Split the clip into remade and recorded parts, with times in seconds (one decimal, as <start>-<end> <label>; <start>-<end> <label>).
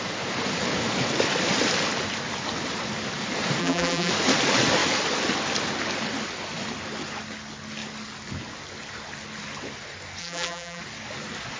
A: 0.0-3.6 recorded; 3.6-4.1 remade; 4.1-10.2 recorded; 10.2-10.8 remade; 10.8-11.6 recorded